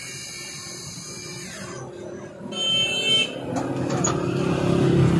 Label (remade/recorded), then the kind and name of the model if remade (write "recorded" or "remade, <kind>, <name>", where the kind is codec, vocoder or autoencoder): recorded